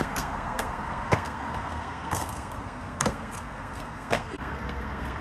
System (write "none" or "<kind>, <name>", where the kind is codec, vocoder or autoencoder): codec, SNAC